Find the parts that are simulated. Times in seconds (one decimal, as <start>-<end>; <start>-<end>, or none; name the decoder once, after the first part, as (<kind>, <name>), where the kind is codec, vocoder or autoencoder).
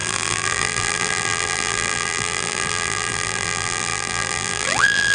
0.0-5.1 (vocoder, BigVGAN v2)